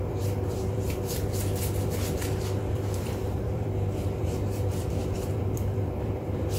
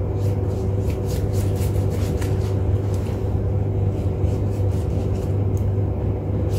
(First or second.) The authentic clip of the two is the second